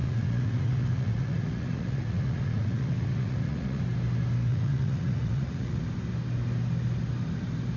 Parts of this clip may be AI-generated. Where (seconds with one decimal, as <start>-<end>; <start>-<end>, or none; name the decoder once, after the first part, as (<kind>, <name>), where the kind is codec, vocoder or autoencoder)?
0.0-3.8 (vocoder, Vocos); 4.5-5.8